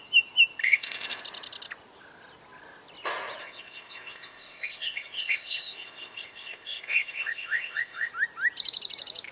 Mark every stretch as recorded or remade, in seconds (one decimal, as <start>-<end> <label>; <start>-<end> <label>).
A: 0.0-0.6 recorded; 0.6-1.2 remade; 1.2-3.4 recorded; 3.4-8.1 remade; 8.1-9.3 recorded

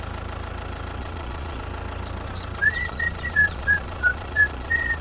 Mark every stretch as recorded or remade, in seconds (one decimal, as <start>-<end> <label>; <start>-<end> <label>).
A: 0.0-1.0 recorded; 1.0-1.6 remade; 1.6-2.6 recorded; 2.6-5.0 remade

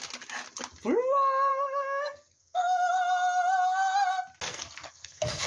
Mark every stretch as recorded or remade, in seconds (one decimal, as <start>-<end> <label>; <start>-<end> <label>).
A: 0.0-1.5 recorded; 1.5-2.9 remade; 2.9-4.5 recorded; 4.5-5.5 remade

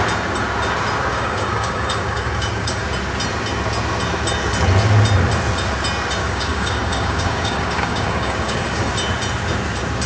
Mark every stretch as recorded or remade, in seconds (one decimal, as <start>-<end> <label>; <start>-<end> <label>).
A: 0.0-1.1 recorded; 1.1-2.8 remade; 2.8-6.2 recorded; 6.2-8.9 remade; 8.9-10.1 recorded